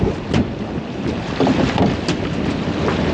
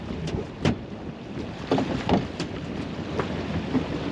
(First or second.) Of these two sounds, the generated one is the second